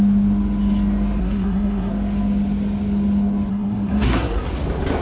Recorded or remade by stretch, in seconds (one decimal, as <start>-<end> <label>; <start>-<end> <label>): 0.0-1.2 recorded; 1.2-1.9 remade; 1.9-3.5 recorded; 3.5-4.5 remade; 4.5-5.0 recorded